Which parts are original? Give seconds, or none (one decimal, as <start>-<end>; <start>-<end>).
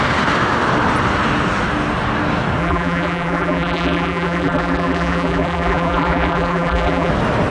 0.0-2.6; 7.1-7.5